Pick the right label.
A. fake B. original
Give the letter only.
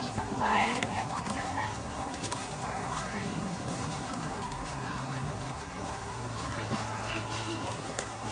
A